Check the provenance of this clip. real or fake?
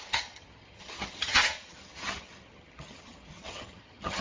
fake